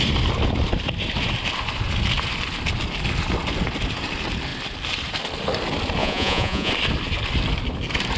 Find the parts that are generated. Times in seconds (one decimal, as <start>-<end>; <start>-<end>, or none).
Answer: 6.0-6.7